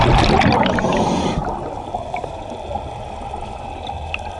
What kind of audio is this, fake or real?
real